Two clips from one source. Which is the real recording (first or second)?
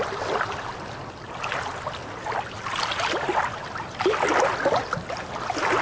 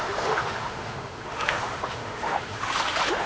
first